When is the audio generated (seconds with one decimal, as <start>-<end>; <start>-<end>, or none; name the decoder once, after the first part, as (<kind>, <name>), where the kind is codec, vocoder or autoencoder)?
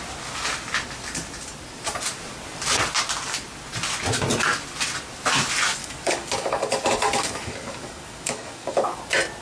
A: 5.8-9.0 (codec, DAC)